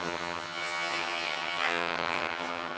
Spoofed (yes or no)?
yes